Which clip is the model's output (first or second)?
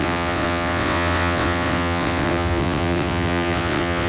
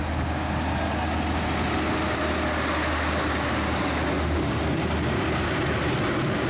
first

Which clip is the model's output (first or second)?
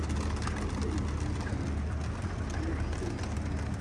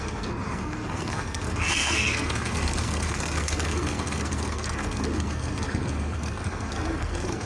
second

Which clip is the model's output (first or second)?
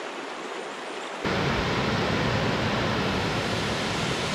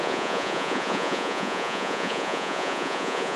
second